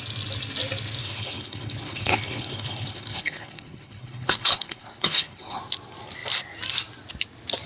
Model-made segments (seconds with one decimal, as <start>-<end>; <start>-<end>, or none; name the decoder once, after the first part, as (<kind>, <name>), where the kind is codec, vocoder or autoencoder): 1.0-5.6 (codec, HILCodec)